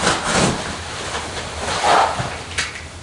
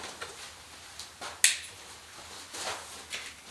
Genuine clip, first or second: second